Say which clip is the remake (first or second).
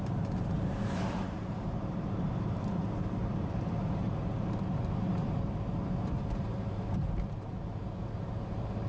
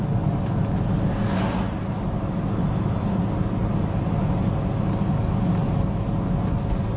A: first